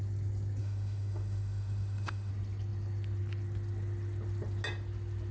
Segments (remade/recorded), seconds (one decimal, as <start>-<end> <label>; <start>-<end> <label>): 0.0-0.6 recorded; 0.6-2.3 remade; 2.3-5.3 recorded